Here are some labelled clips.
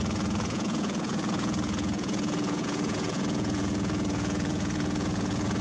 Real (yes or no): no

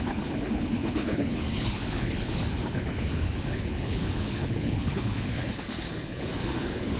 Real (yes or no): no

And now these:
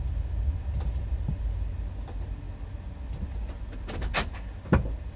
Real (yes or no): yes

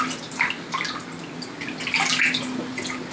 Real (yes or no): yes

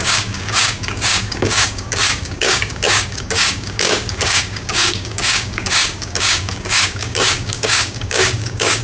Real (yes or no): no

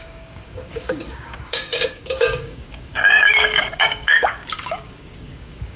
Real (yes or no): no